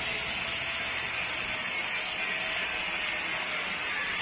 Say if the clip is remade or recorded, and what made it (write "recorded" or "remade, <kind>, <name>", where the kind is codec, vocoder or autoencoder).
recorded